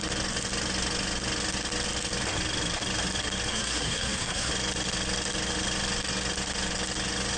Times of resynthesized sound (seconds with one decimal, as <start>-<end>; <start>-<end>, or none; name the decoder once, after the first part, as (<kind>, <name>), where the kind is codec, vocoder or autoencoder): 3.5-4.5 (codec, SNAC)